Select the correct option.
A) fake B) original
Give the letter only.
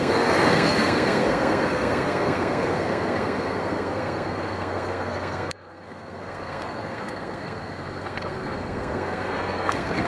A